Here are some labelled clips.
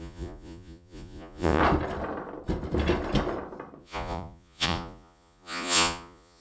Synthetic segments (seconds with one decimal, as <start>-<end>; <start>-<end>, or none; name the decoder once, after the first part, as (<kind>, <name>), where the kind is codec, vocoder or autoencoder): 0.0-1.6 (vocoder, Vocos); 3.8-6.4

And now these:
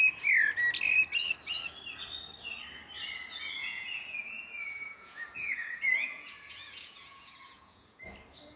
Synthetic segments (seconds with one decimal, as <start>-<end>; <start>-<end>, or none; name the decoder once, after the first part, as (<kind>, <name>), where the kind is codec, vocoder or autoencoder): 3.6-8.0 (vocoder, Vocos)

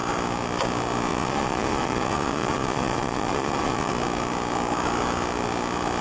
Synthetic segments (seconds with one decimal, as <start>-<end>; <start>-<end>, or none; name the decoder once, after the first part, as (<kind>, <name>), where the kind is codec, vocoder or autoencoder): 1.1-3.9 (vocoder, Vocos)